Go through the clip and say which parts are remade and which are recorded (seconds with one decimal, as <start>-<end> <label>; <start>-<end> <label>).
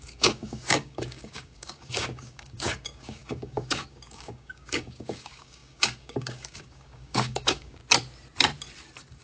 0.0-7.8 remade; 7.8-9.2 recorded